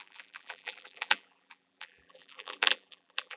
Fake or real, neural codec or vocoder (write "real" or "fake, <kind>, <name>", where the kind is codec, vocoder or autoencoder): fake, vocoder, BigVGAN v2